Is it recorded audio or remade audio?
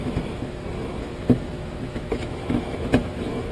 remade